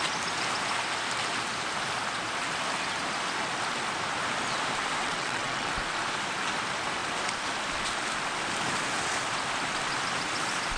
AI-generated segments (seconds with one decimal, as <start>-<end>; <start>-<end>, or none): 5.0-5.7